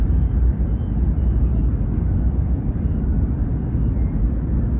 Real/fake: real